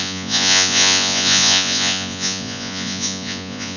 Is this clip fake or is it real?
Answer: fake